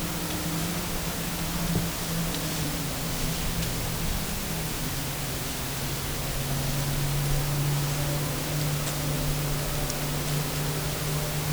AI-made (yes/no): no